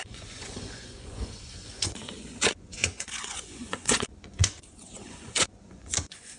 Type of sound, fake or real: fake